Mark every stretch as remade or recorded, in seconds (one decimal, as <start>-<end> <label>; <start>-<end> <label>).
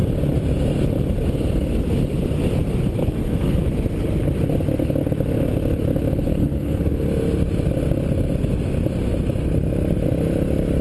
0.0-3.0 recorded; 3.0-3.6 remade; 3.6-6.3 recorded; 6.3-6.8 remade; 6.8-10.8 recorded